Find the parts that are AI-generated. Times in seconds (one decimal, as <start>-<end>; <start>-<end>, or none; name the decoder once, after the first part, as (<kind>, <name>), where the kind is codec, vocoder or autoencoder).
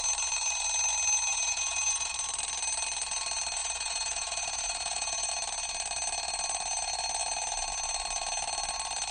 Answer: 1.3-2.1 (vocoder, Vocos); 3.6-5.3